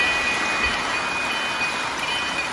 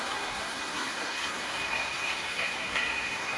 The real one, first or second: first